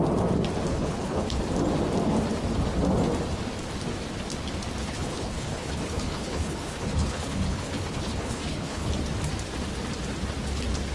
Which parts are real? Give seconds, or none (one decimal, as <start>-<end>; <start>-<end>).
0.0-0.7; 1.4-4.8; 8.9-10.9